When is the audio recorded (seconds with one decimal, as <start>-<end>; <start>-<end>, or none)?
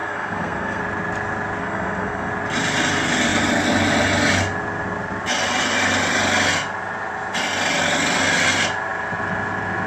0.8-1.6; 2.3-9.9